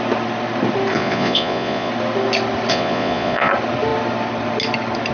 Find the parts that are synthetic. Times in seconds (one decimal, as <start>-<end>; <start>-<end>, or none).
0.9-1.9; 2.7-3.5